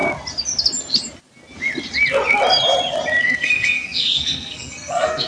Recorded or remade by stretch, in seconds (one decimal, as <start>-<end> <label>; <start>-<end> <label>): 0.0-3.2 recorded; 3.2-5.3 remade